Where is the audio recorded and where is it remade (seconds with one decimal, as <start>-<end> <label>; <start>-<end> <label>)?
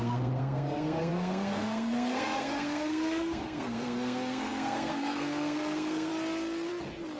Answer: 0.0-6.1 remade; 6.1-7.2 recorded